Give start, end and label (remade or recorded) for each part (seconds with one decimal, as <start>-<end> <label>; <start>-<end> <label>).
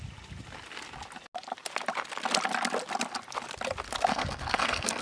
0.0-4.1 recorded; 4.1-5.0 remade